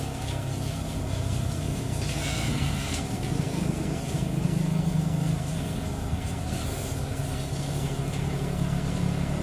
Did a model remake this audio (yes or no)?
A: yes